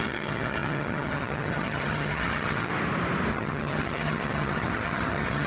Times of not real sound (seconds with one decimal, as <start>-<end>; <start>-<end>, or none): 0.0-2.7; 3.3-5.5